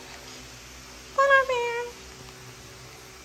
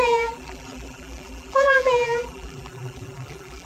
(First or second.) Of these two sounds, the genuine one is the first